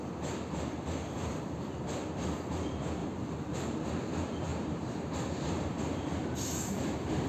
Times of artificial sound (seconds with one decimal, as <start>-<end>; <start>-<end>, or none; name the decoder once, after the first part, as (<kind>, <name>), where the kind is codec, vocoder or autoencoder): 3.0-3.9 (vocoder, BigVGAN v2)